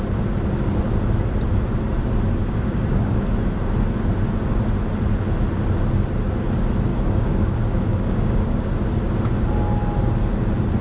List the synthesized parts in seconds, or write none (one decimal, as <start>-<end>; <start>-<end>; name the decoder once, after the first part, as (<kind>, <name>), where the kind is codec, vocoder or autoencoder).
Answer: 2.4-3.2 (codec, DAC); 6.9-8.7